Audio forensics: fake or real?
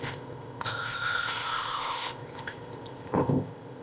fake